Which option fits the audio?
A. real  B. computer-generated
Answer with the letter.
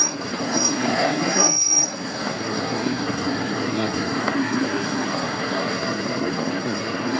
B